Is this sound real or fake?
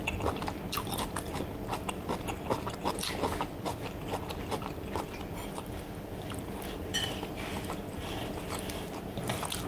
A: real